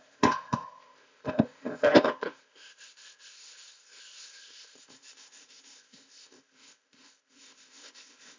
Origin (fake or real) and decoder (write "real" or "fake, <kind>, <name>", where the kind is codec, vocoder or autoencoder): fake, codec, ZipCodec